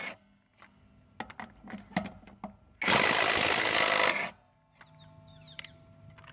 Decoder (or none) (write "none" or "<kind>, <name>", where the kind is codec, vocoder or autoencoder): none